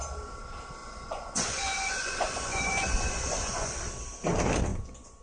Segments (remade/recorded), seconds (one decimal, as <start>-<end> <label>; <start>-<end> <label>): 0.0-0.8 recorded; 0.8-3.7 remade; 3.7-4.7 recorded; 4.7-5.2 remade